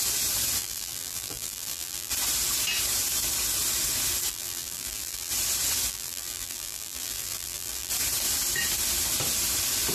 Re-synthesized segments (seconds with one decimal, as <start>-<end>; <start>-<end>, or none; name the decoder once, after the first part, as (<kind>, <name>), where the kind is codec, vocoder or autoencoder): 0.6-2.1 (vocoder, BigVGAN v2); 4.3-5.3; 5.9-7.9